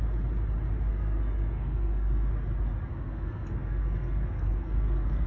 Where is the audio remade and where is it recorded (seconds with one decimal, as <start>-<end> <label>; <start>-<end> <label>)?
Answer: 0.0-0.9 recorded; 0.9-2.3 remade; 2.3-2.9 recorded; 2.9-5.3 remade